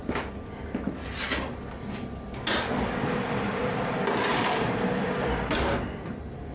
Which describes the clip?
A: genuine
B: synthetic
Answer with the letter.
A